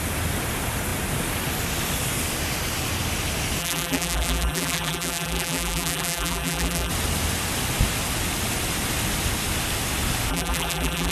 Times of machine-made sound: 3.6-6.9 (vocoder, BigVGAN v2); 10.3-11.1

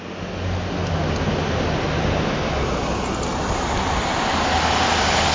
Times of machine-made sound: none

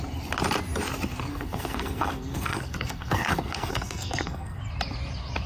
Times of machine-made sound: 1.3-4.6 (codec, SNAC)

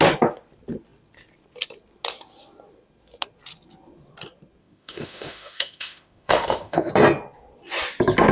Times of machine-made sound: 4.6-6.9 (autoencoder, DAC-VAE)

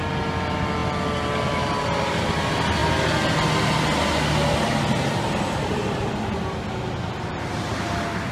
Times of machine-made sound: none

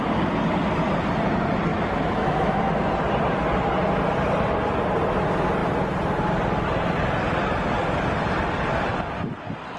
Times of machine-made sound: 1.7-2.6 (autoencoder, DAC-VAE)

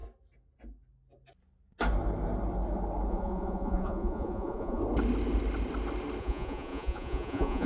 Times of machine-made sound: 3.1-4.8 (vocoder, Vocos); 6.2-7.7

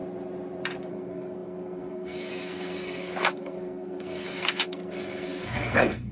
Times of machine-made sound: 0.9-6.1 (codec, SNAC)